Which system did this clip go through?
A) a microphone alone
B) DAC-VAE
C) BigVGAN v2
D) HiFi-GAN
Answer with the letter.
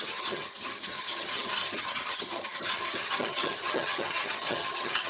D